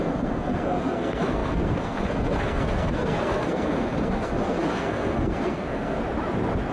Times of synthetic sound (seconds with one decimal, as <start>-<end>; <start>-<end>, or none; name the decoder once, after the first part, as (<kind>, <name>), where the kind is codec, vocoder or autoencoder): 0.0-6.0 (codec, SNAC)